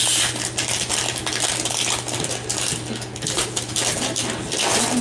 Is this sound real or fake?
real